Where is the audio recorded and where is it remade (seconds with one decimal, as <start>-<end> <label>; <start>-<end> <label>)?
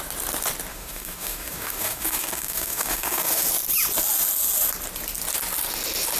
0.0-0.7 recorded; 0.7-3.5 remade; 3.5-6.2 recorded